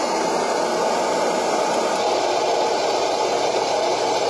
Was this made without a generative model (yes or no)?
yes